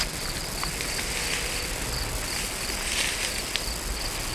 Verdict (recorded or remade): recorded